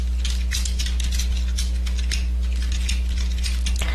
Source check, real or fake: real